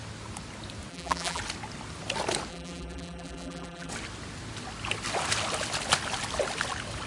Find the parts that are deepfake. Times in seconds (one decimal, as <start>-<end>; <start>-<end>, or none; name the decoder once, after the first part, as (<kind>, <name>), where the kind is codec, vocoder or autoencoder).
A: 0.9-1.4 (vocoder, BigVGAN v2); 2.5-3.9